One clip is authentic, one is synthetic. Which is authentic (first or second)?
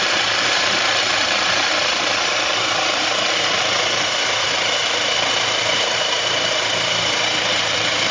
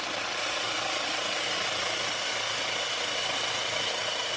second